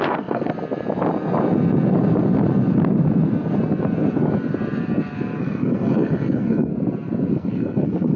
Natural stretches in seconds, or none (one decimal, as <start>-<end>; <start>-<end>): 0.5-5.4; 6.7-7.3